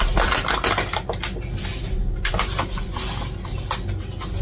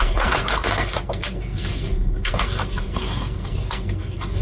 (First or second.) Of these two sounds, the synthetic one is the second